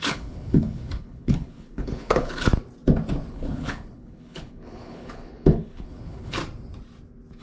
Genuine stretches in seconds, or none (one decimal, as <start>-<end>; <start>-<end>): 2.5-3.3; 6.4-7.4